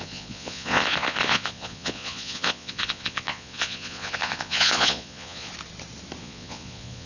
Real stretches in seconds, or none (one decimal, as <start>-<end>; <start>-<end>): 5.5-6.2